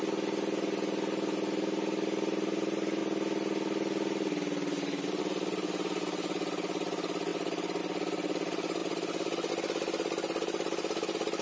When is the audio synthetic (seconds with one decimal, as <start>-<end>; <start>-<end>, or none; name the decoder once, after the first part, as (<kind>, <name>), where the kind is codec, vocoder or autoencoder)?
none